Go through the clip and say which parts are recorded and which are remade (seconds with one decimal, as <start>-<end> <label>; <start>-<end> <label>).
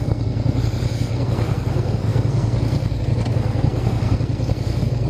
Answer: 0.0-5.1 remade